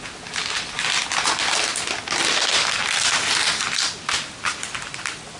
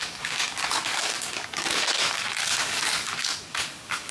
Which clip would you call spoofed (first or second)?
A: second